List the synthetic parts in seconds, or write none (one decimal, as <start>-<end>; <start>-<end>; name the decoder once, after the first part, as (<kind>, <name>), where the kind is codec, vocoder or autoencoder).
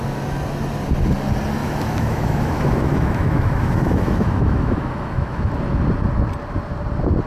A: 1.6-5.5 (autoencoder, DAC-VAE)